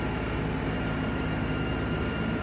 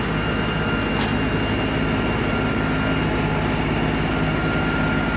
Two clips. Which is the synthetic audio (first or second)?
first